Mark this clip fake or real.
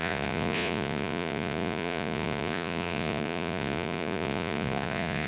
fake